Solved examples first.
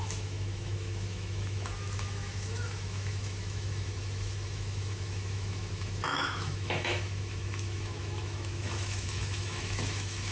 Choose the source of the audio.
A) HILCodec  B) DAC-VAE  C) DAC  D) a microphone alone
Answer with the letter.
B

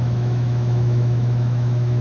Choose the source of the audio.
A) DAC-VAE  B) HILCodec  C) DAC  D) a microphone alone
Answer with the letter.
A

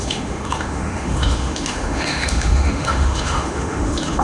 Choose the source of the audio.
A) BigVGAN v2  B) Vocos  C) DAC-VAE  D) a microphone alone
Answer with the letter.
C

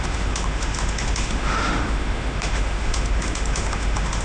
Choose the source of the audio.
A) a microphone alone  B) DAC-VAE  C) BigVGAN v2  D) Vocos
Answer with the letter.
B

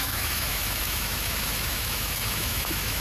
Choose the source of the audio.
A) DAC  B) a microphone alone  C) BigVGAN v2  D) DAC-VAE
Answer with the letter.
D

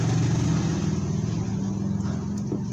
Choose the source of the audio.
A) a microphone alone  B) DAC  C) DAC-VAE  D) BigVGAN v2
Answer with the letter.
A